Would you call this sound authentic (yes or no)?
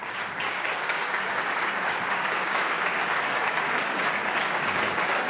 no